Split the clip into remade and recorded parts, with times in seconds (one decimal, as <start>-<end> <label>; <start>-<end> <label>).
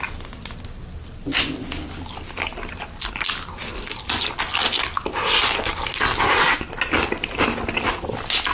0.0-8.5 recorded